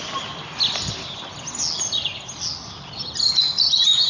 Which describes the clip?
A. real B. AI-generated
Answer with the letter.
A